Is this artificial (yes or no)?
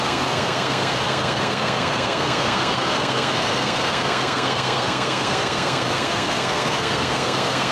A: yes